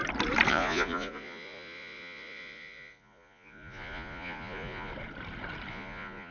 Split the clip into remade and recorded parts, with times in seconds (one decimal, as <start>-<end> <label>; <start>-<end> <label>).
0.0-0.5 recorded; 0.5-4.9 remade; 4.9-5.7 recorded; 5.7-6.3 remade

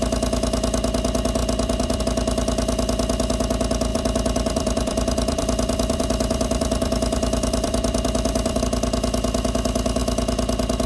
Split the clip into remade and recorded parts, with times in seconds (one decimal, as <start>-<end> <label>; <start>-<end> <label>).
0.0-1.4 recorded; 1.4-2.0 remade; 2.0-3.9 recorded; 3.9-8.6 remade; 8.6-10.9 recorded

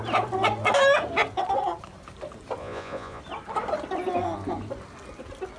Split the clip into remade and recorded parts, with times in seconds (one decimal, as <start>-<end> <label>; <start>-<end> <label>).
0.0-2.6 recorded; 2.6-3.2 remade; 3.2-5.6 recorded

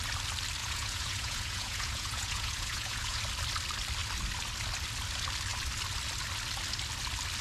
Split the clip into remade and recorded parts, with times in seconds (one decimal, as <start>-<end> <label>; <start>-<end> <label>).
0.0-0.6 recorded; 0.6-3.2 remade; 3.2-7.4 recorded

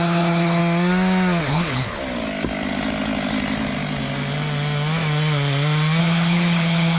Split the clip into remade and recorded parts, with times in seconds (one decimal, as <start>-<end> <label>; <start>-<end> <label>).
0.0-0.6 remade; 0.6-1.5 recorded; 1.5-2.0 remade; 2.0-6.0 recorded; 6.0-7.0 remade

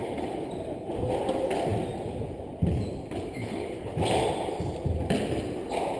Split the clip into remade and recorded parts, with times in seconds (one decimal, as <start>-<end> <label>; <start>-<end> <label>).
0.0-0.5 remade; 0.5-3.4 recorded; 3.4-3.9 remade; 3.9-6.0 recorded

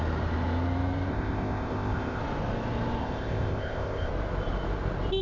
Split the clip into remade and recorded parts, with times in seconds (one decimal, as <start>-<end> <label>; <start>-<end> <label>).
0.0-1.1 recorded; 1.1-2.2 remade; 2.2-3.0 recorded; 3.0-4.1 remade; 4.1-5.2 recorded